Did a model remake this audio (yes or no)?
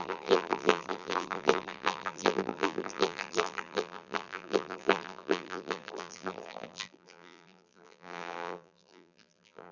yes